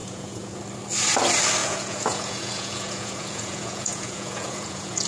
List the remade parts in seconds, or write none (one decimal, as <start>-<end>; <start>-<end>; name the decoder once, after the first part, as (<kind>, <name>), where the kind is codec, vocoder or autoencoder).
0.0-0.6 (vocoder, Vocos); 1.6-5.1